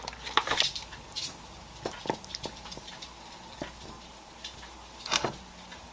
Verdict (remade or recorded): recorded